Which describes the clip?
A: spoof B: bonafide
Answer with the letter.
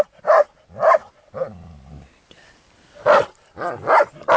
A